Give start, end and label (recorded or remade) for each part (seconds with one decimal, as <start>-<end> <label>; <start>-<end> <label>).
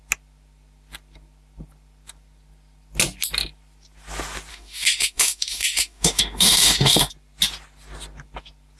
0.0-4.5 recorded; 4.5-7.1 remade; 7.1-8.8 recorded